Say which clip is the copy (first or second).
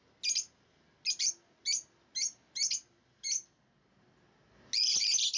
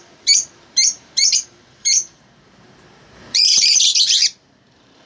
second